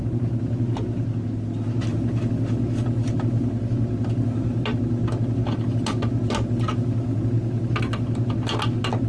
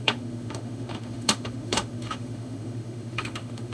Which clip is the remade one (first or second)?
second